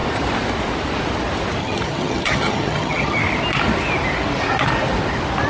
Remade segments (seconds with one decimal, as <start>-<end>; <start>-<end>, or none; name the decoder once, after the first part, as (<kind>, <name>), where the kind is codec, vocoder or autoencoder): 1.6-3.2 (vocoder, HiFi-GAN)